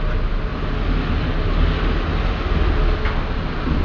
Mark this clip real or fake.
real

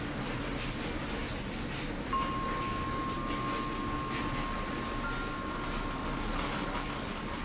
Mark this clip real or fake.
real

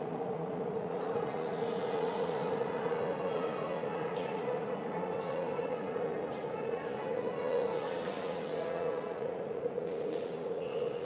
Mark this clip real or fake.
fake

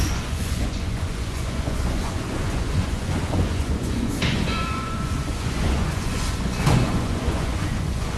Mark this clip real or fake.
fake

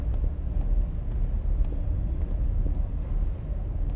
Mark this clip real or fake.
real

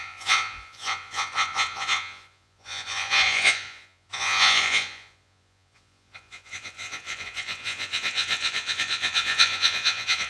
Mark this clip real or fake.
fake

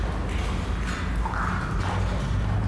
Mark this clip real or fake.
real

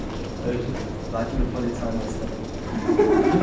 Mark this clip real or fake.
real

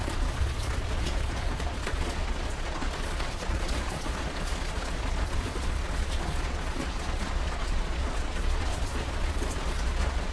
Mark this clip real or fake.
fake